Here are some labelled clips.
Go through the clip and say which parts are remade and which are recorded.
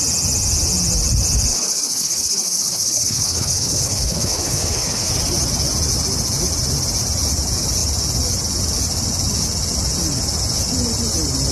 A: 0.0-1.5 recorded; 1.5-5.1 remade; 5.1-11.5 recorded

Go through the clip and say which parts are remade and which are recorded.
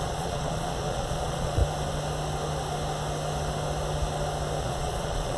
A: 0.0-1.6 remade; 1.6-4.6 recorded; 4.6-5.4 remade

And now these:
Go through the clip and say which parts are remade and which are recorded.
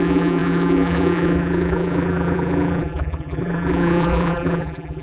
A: 0.0-5.0 remade